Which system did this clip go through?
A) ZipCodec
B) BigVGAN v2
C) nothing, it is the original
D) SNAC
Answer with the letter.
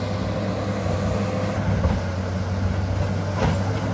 C